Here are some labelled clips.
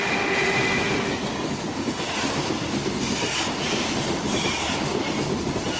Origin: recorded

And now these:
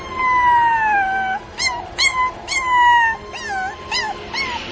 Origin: recorded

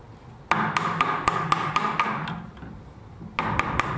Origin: recorded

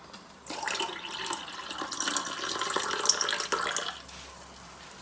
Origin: recorded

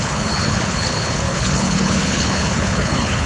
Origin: remade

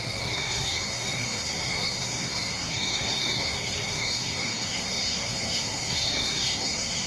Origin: remade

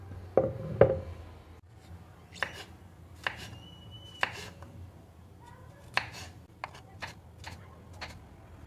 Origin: recorded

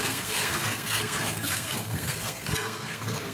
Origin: remade